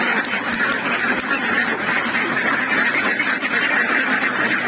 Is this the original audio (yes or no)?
yes